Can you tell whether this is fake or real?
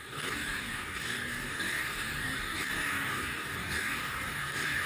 fake